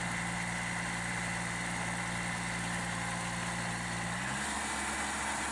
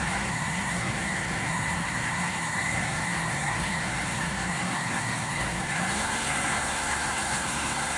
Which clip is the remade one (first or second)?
second